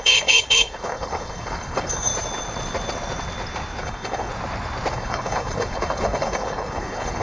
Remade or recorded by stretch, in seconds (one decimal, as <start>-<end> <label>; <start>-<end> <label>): 0.0-2.1 remade; 2.1-3.8 recorded; 3.8-4.3 remade; 4.3-4.9 recorded; 4.9-7.2 remade